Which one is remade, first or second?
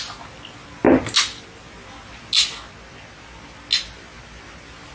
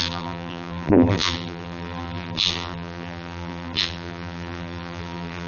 second